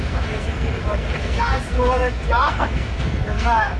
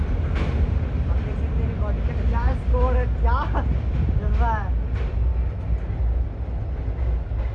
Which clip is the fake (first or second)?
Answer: first